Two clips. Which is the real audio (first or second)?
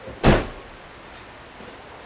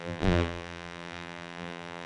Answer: first